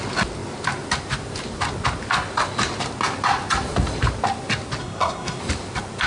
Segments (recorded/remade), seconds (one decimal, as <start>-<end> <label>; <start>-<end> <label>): 0.0-4.8 recorded; 4.8-5.4 remade; 5.4-6.1 recorded